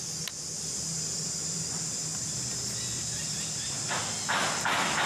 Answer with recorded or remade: recorded